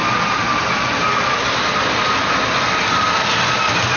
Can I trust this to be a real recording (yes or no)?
yes